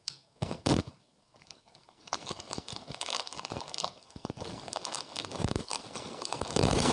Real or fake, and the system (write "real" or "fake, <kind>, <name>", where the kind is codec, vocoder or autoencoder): fake, codec, SNAC